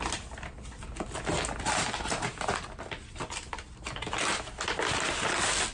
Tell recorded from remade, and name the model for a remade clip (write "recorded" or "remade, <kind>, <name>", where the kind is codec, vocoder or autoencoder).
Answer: recorded